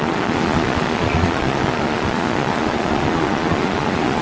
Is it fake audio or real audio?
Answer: fake